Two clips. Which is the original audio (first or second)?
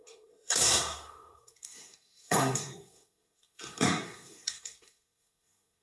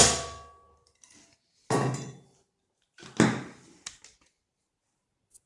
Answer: second